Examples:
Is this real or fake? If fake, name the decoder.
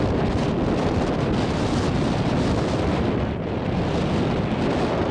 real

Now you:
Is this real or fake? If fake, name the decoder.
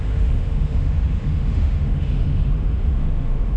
fake, autoencoder, DAC-VAE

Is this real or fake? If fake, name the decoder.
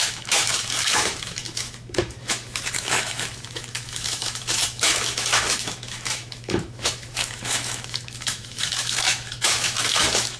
fake, autoencoder, DAC-VAE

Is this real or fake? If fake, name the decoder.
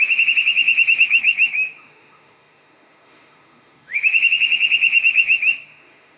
fake, autoencoder, DAC-VAE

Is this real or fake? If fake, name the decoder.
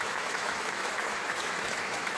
fake, autoencoder, DAC-VAE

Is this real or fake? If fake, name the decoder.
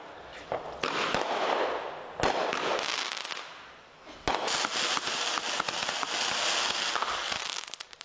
real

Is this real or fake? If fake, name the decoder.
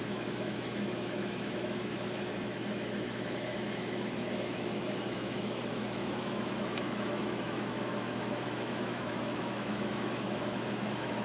fake, autoencoder, DAC-VAE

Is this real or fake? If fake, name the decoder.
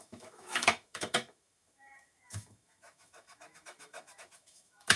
fake, autoencoder, DAC-VAE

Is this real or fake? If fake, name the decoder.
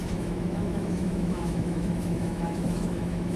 fake, autoencoder, DAC-VAE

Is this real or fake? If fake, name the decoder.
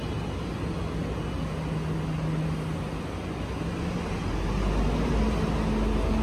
real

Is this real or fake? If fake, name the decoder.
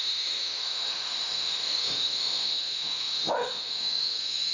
fake, autoencoder, DAC-VAE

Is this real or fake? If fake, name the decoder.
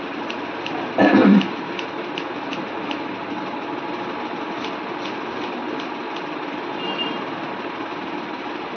real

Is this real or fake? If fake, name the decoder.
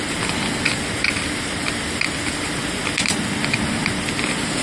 real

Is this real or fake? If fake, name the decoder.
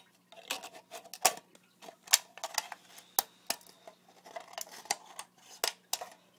real